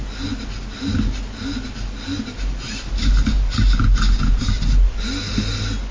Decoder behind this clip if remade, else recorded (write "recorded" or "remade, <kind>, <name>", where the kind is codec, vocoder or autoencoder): recorded